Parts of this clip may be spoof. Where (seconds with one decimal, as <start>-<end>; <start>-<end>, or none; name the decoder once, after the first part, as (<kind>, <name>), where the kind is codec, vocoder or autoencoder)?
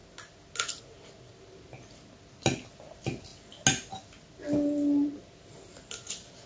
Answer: none